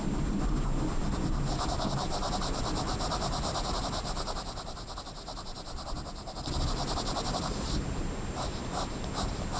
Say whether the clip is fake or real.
real